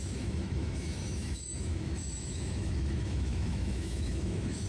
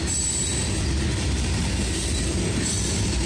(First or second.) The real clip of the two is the second